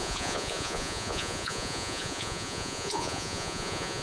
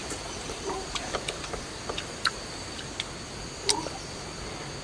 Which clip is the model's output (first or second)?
first